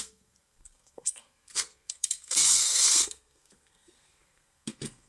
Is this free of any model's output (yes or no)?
no